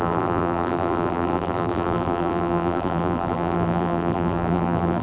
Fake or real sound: fake